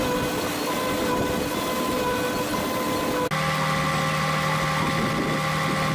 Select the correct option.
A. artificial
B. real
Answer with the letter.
B